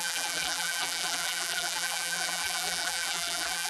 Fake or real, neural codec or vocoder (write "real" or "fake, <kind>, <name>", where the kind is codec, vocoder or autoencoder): fake, vocoder, BigVGAN v2